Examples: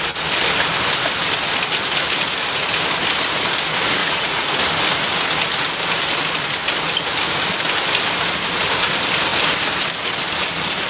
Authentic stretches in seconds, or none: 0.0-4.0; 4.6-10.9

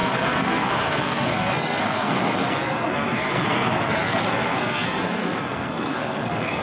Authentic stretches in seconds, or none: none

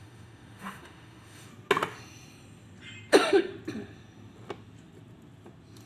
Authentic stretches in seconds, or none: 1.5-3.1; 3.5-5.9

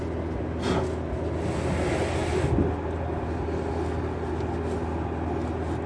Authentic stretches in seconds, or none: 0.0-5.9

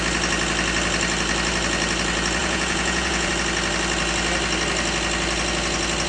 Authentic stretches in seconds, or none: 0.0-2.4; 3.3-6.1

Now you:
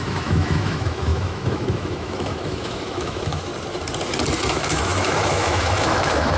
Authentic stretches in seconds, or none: 3.5-4.4

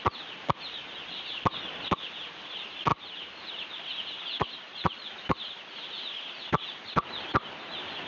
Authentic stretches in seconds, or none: 0.0-8.1